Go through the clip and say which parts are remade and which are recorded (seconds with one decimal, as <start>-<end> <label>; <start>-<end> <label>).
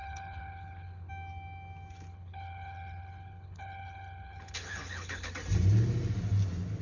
0.0-1.1 remade; 1.1-2.1 recorded; 2.1-5.3 remade; 5.3-6.8 recorded